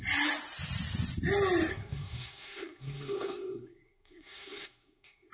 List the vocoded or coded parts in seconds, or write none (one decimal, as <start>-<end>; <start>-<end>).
1.7-5.3